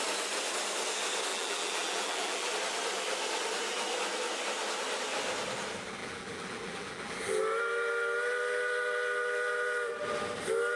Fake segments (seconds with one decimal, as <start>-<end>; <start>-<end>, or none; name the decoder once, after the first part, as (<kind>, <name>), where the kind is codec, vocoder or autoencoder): 1.3-2.5 (vocoder, BigVGAN v2); 6.0-7.4